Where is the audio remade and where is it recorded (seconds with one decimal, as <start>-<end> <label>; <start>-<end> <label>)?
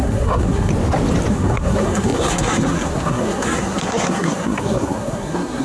0.0-0.7 remade; 0.7-1.3 recorded; 1.3-5.6 remade